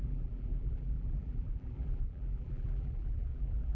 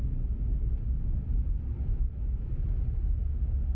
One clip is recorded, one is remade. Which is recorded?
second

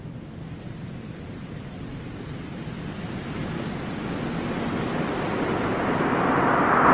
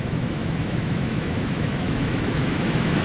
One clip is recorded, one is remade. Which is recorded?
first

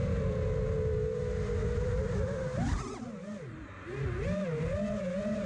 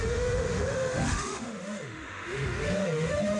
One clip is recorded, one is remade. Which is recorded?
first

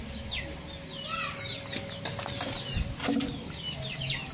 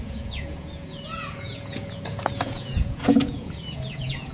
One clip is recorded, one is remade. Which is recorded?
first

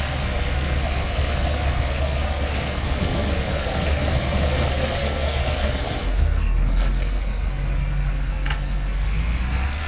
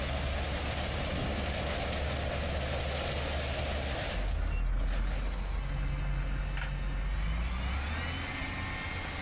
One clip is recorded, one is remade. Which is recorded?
second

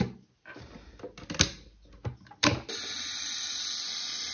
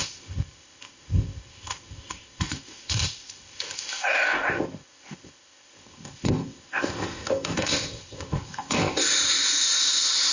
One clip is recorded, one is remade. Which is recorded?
first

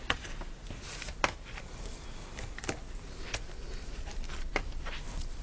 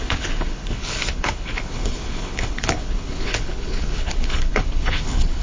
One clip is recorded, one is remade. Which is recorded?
first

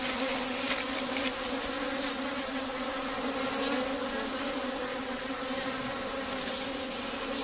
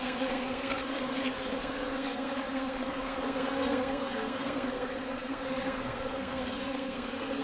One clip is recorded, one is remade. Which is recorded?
first